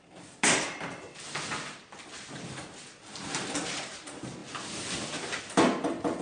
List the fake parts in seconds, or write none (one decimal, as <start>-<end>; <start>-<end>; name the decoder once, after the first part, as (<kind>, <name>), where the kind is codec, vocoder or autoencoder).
none